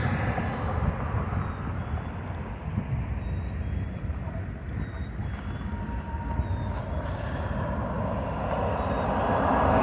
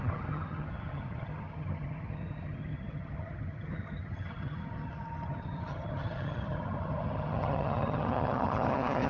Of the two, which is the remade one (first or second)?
second